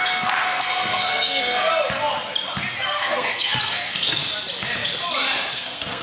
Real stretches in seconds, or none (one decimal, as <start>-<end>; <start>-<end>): 1.7-2.8; 4.2-5.5